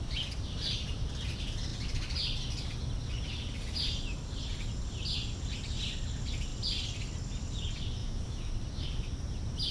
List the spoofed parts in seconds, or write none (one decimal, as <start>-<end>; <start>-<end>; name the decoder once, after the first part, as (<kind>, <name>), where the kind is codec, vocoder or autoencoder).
8.0-8.5 (autoencoder, DAC-VAE)